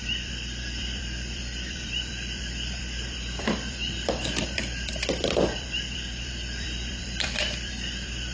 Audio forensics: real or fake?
fake